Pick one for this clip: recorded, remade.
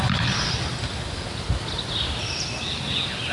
recorded